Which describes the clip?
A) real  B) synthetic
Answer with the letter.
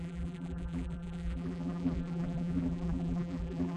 B